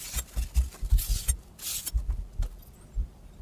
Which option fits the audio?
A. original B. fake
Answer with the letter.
A